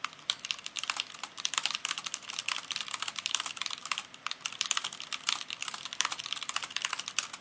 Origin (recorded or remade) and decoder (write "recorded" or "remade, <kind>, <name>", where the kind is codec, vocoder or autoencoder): remade, vocoder, BigVGAN v2